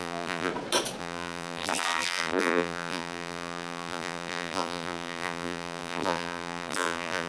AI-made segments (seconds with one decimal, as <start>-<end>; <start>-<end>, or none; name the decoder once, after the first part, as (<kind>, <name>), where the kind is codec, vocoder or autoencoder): 0.0-0.5 (vocoder, BigVGAN v2); 1.0-7.3